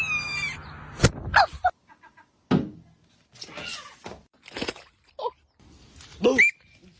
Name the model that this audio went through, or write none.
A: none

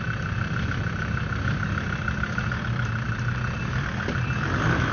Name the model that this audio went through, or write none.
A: vocoder, BigVGAN v2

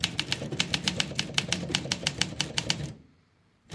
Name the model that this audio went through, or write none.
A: vocoder, BigVGAN v2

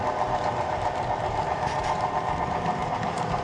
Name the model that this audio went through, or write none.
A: vocoder, BigVGAN v2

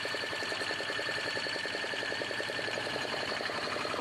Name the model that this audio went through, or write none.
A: vocoder, BigVGAN v2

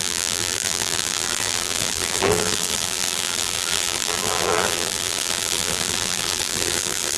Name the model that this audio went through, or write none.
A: vocoder, BigVGAN v2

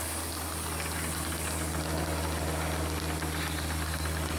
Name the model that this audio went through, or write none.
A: none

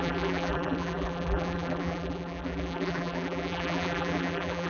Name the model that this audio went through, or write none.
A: vocoder, BigVGAN v2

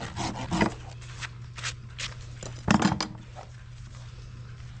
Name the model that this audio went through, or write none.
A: none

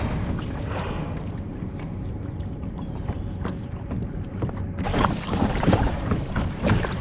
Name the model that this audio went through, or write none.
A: vocoder, BigVGAN v2